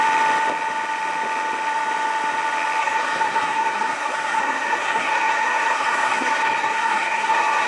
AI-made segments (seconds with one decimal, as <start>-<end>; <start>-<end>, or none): 2.8-7.7